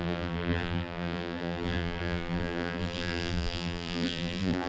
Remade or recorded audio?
remade